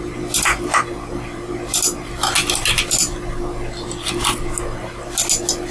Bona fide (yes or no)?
yes